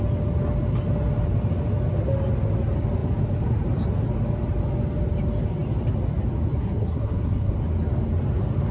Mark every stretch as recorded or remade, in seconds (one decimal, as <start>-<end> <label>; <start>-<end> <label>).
0.0-6.6 recorded; 6.6-7.5 remade; 7.5-8.7 recorded